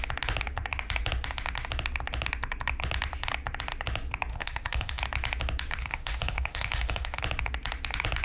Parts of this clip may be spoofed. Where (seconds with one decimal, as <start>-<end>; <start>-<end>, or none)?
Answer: 4.3-5.0; 5.8-7.2